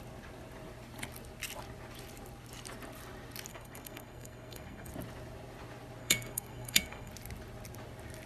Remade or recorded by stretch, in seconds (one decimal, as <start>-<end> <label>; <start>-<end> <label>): 0.0-3.5 recorded; 3.5-4.9 remade; 4.9-6.0 recorded; 6.0-7.1 remade; 7.1-8.3 recorded